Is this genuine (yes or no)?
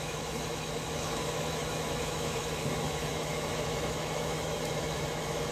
no